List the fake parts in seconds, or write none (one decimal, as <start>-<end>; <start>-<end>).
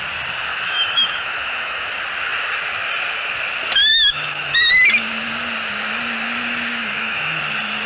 0.5-1.9; 3.9-4.7; 6.8-7.4